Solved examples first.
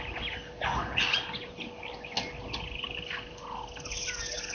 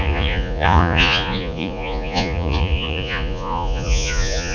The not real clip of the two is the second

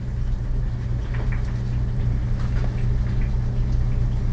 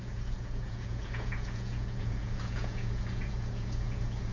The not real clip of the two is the second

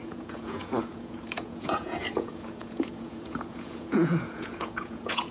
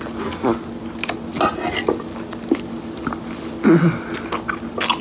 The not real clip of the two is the first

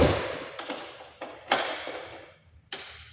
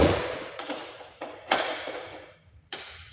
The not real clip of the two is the second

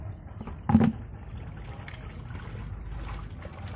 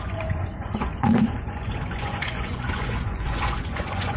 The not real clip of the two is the second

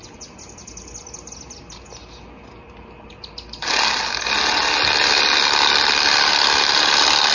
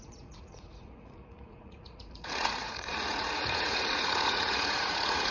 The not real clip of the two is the second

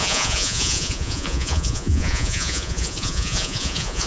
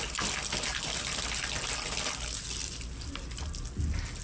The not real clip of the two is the first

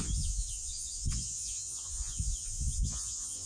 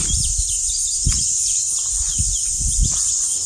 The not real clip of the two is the first